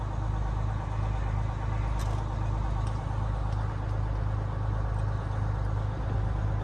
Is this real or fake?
real